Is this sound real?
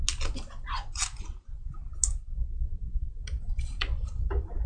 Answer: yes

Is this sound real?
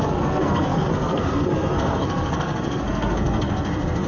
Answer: no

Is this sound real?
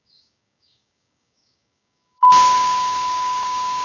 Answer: no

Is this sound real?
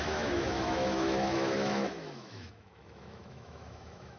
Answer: no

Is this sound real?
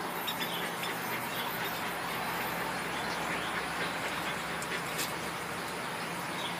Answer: yes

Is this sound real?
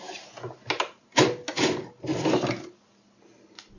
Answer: yes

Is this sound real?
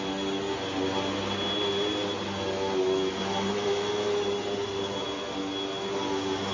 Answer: yes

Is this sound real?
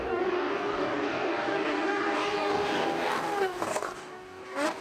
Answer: no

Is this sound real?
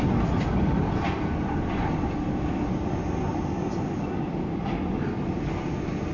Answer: yes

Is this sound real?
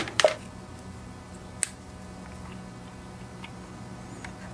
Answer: yes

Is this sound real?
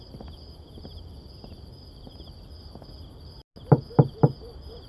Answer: yes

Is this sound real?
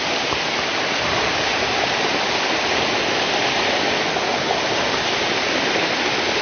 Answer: yes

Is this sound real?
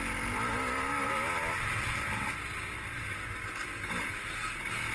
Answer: yes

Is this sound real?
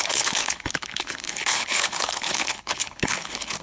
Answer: no